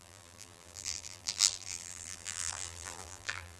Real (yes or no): no